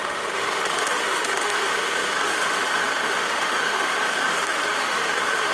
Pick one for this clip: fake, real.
fake